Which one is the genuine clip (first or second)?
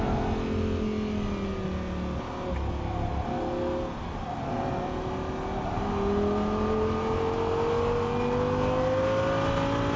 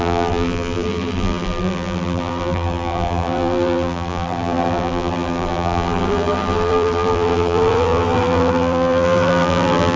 first